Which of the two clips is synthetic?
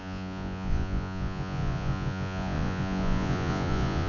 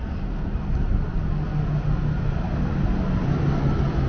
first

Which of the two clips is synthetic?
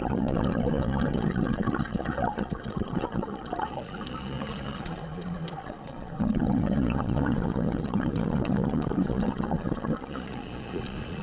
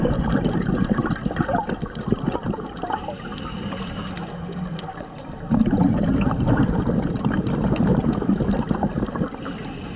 first